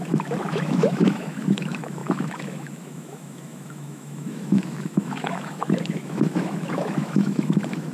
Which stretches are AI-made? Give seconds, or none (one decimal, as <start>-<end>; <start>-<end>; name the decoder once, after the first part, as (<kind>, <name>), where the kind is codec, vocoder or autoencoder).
0.0-7.9 (autoencoder, DAC-VAE)